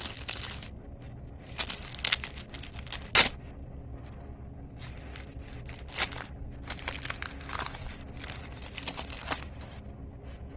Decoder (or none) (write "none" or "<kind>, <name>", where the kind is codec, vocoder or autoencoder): none